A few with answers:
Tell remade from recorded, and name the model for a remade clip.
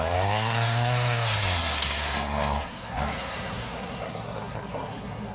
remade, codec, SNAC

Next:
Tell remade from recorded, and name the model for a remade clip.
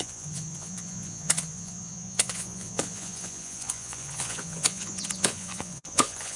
remade, vocoder, Vocos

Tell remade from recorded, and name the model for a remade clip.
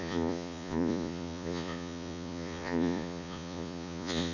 remade, vocoder, Vocos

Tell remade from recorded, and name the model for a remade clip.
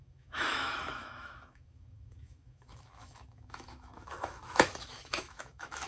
remade, autoencoder, DAC-VAE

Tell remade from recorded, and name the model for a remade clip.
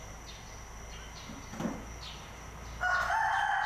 recorded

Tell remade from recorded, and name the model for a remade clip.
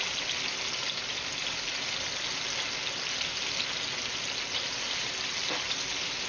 recorded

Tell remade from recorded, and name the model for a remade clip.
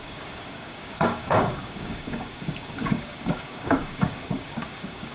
remade, codec, DAC